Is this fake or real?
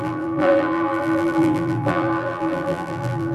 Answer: fake